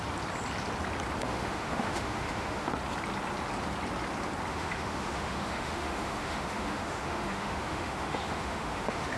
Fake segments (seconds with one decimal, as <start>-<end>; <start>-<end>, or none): 1.2-2.7; 4.5-9.2